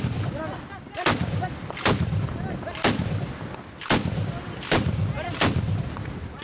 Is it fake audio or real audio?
real